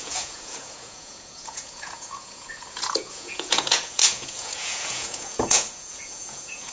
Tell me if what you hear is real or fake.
fake